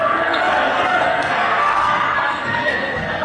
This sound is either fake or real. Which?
fake